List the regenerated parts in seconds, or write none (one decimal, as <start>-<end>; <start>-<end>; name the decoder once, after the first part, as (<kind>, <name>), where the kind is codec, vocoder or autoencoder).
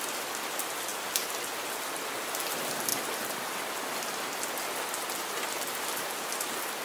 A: none